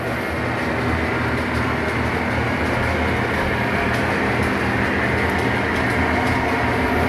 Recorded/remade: recorded